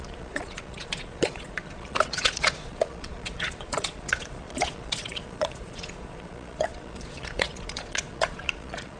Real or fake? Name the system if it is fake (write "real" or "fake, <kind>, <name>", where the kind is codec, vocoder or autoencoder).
fake, vocoder, Vocos